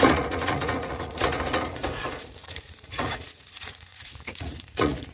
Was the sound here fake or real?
fake